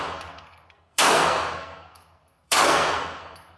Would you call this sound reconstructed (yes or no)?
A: yes